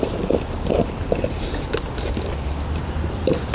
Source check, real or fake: real